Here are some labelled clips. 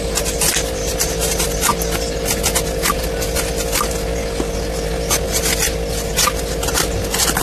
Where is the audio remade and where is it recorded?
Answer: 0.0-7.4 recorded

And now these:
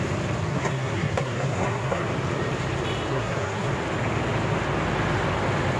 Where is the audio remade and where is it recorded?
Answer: 0.0-0.5 recorded; 0.5-2.1 remade; 2.1-3.1 recorded; 3.1-3.7 remade; 3.7-5.8 recorded

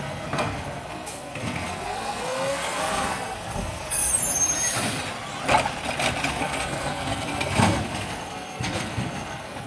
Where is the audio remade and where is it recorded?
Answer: 0.0-4.1 remade; 4.1-6.3 recorded; 6.3-9.7 remade

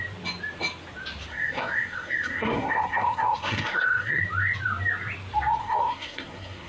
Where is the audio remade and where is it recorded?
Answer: 0.0-1.3 recorded; 1.3-4.2 remade; 4.2-5.6 recorded; 5.6-6.7 remade

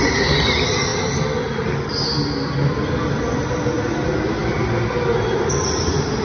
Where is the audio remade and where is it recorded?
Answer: 0.0-6.2 recorded